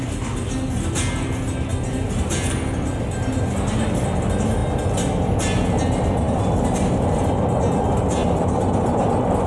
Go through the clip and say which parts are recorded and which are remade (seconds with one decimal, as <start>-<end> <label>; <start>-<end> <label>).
0.0-9.5 recorded